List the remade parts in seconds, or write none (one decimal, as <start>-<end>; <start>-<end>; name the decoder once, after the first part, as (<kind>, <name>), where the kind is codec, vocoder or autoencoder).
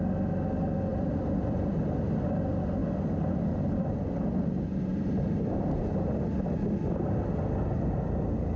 0.9-1.9 (vocoder, BigVGAN v2)